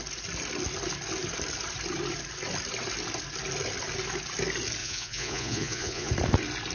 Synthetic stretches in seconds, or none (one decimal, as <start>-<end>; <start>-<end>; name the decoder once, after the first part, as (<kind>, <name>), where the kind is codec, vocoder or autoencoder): 4.8-6.1 (vocoder, Vocos)